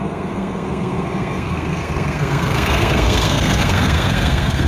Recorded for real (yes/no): no